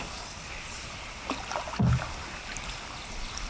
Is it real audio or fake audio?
real